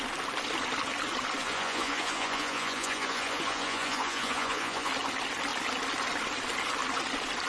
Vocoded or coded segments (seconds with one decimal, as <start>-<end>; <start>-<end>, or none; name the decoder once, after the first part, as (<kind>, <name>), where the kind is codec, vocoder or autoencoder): 1.4-4.9 (vocoder, Vocos)